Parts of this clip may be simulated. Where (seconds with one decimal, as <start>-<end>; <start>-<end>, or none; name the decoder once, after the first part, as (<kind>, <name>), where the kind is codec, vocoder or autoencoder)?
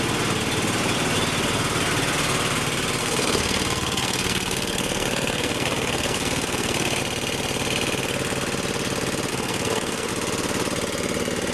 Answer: 3.0-7.0 (codec, SNAC); 9.3-10.1